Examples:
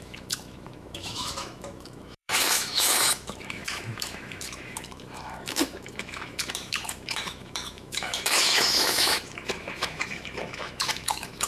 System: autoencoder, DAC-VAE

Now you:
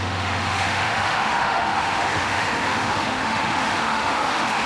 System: autoencoder, DAC-VAE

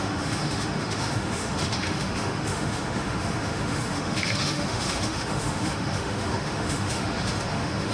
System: autoencoder, DAC-VAE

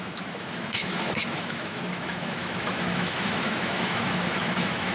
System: autoencoder, DAC-VAE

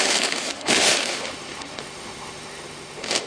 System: autoencoder, DAC-VAE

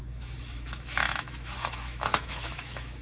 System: autoencoder, DAC-VAE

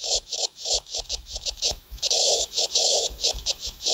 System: autoencoder, DAC-VAE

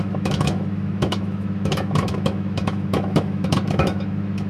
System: autoencoder, DAC-VAE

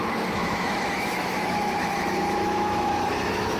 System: autoencoder, DAC-VAE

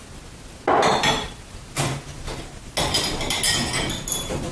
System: none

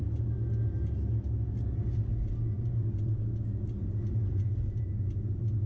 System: none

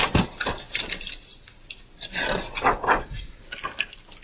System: none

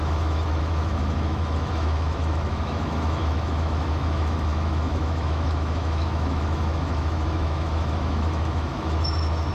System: autoencoder, DAC-VAE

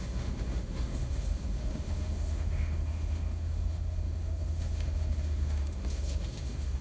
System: autoencoder, DAC-VAE